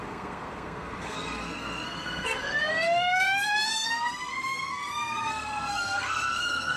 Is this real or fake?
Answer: fake